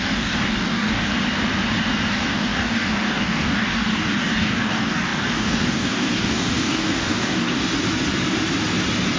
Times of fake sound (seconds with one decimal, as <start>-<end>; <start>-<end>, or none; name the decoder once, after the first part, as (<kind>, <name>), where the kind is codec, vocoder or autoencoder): 0.0-1.1 (codec, DAC); 2.1-7.6